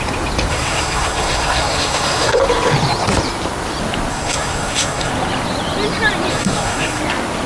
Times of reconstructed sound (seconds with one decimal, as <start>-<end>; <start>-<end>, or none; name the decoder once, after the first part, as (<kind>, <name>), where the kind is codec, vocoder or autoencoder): 0.5-2.4 (codec, SNAC); 4.1-5.1; 6.3-7.0